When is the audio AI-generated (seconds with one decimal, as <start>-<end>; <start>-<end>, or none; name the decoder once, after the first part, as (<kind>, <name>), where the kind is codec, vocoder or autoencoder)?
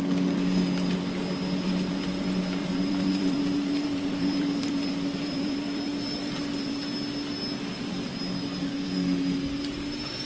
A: 2.6-6.8 (vocoder, BigVGAN v2)